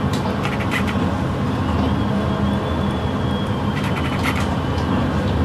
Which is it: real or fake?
real